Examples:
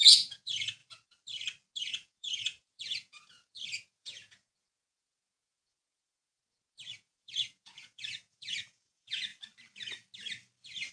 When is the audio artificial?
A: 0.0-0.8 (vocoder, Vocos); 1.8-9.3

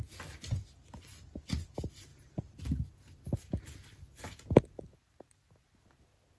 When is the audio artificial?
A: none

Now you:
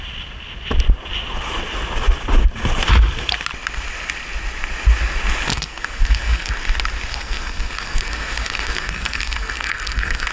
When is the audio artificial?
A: 5.5-6.5 (codec, SNAC); 7.1-10.3

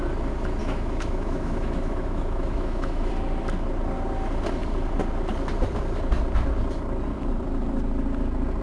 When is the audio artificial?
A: 0.6-3.1 (autoencoder, DAC-VAE)

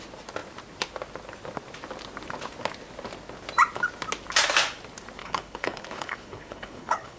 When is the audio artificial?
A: 5.2-7.2 (codec, HILCodec)